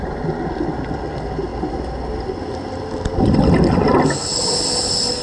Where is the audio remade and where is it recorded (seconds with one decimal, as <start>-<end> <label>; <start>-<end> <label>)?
0.0-5.2 recorded